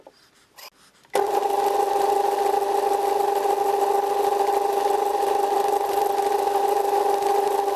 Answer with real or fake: real